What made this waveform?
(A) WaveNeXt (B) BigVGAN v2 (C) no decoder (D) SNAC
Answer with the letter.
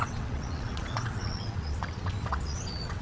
A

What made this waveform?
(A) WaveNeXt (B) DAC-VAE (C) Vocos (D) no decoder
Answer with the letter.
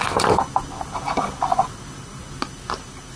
D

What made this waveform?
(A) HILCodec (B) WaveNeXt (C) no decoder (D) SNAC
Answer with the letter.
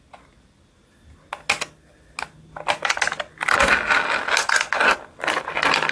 C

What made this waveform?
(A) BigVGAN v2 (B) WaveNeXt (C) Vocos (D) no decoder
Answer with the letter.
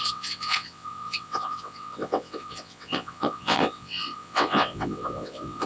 B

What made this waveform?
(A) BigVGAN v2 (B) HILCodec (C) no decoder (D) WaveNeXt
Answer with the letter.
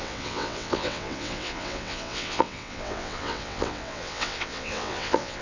D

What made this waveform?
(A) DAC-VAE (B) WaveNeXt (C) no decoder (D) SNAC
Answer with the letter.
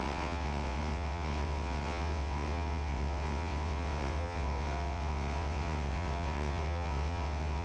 B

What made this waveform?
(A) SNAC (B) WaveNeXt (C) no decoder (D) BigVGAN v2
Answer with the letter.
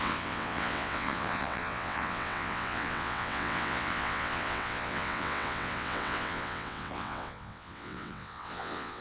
B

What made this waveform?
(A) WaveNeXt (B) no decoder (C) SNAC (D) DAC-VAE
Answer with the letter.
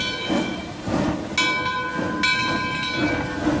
B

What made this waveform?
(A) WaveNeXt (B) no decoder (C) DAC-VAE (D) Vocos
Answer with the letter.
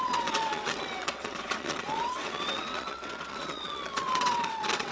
A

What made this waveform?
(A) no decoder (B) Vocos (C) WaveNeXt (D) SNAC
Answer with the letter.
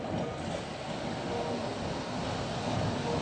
A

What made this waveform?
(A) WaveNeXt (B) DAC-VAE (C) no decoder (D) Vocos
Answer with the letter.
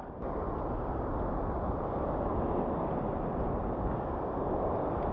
C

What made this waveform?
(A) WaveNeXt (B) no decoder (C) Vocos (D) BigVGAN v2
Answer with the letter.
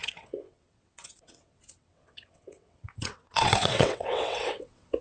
A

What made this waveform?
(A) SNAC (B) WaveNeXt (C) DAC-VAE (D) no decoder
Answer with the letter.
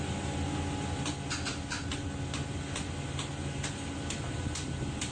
D